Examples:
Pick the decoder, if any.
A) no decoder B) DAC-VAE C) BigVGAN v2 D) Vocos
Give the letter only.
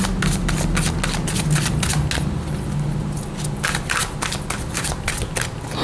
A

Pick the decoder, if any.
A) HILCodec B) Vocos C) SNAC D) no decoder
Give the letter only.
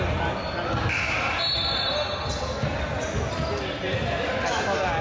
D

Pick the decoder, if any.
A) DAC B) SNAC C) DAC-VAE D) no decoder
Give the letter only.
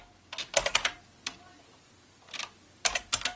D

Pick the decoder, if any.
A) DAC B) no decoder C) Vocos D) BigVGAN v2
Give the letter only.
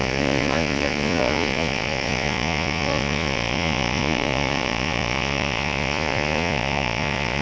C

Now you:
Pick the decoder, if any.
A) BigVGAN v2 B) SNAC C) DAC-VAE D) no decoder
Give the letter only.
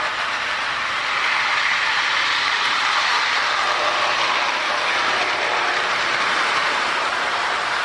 A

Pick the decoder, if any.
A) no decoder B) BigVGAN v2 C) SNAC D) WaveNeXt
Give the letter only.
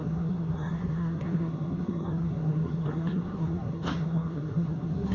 C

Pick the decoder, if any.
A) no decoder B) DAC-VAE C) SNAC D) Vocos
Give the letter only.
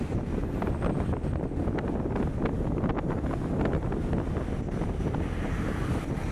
A